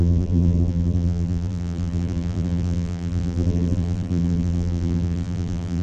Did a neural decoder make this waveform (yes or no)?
yes